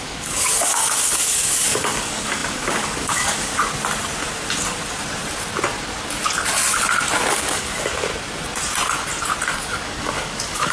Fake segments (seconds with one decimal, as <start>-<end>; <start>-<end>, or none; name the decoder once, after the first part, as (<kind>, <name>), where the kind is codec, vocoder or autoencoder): 0.0-3.5 (codec, DAC); 7.3-8.1; 9.5-10.7